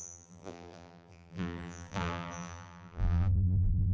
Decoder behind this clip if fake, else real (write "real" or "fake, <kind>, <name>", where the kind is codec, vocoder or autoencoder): fake, vocoder, BigVGAN v2